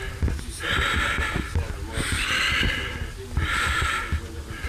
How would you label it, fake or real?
real